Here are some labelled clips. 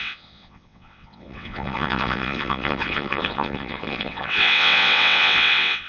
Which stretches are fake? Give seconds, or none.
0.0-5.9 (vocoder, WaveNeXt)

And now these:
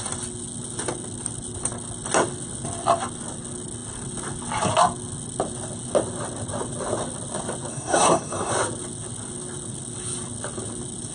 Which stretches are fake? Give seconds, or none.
7.7-8.5 (codec, SNAC)

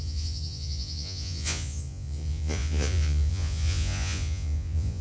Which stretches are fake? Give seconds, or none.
0.0-5.0 (vocoder, Vocos)

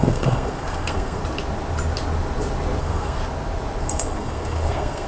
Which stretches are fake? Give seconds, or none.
0.0-1.2 (codec, SNAC); 2.8-3.2; 3.8-5.1

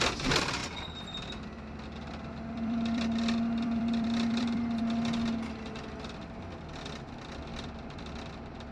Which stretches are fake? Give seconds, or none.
0.6-4.8 (vocoder, BigVGAN v2); 7.5-8.0